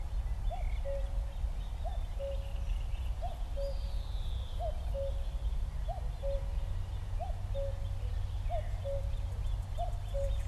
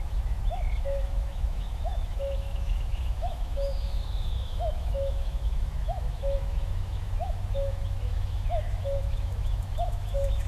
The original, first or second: first